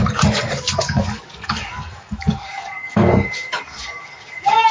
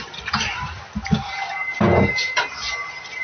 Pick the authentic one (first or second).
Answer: second